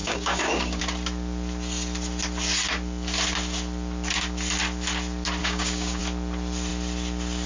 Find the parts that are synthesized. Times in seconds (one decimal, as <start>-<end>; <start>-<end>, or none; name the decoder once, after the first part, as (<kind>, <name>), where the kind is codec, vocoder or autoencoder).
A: 0.0-0.8 (codec, DAC); 5.4-6.0